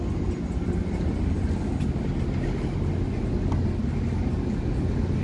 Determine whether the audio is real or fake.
real